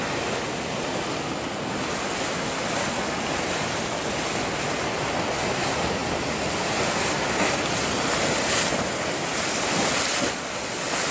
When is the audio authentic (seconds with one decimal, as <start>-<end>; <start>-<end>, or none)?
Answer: 0.0-11.1